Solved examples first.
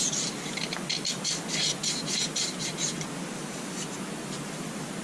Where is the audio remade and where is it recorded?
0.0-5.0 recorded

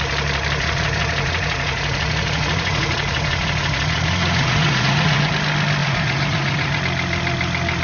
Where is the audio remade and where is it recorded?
0.0-0.6 recorded; 0.6-5.3 remade; 5.3-5.8 recorded; 5.8-6.8 remade; 6.8-7.8 recorded

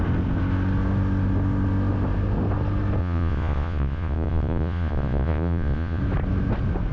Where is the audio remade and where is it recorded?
0.0-3.0 recorded; 3.0-6.0 remade; 6.0-6.9 recorded